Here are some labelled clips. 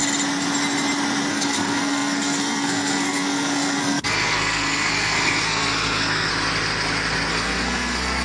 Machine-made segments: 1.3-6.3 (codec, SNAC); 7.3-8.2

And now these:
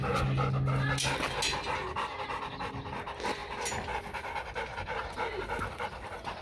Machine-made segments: none

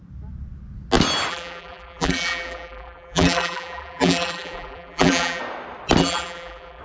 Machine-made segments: 1.3-5.4 (vocoder, BigVGAN v2); 6.0-6.8